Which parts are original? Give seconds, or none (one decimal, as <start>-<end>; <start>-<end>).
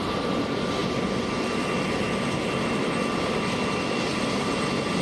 0.0-5.0